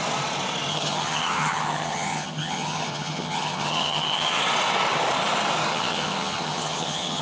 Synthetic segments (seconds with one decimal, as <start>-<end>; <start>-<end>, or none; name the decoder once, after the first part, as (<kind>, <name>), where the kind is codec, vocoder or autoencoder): 0.7-4.4 (vocoder, HiFi-GAN); 5.7-7.2